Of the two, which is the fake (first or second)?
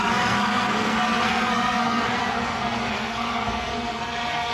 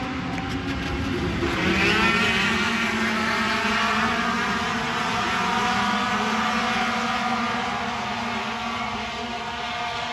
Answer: first